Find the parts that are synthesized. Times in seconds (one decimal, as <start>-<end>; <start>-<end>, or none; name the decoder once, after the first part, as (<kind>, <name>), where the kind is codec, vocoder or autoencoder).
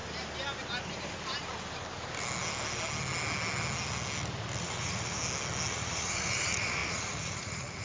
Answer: 4.6-5.2 (vocoder, Vocos); 5.7-7.8